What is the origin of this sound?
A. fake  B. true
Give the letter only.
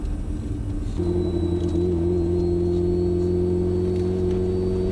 B